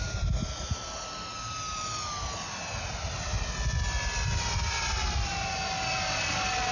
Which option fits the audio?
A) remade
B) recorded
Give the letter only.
B